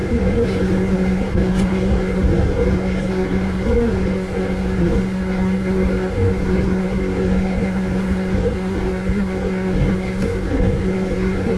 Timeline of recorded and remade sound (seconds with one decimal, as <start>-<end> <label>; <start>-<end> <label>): 0.0-11.6 remade